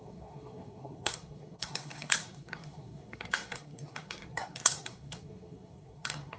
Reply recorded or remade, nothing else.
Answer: remade